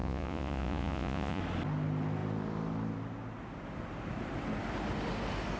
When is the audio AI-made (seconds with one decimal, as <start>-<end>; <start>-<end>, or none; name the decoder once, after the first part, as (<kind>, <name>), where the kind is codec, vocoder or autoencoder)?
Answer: 0.0-1.4 (vocoder, Vocos)